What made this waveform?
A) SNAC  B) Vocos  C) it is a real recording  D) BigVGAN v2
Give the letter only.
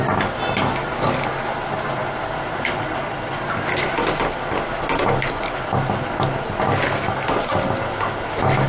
C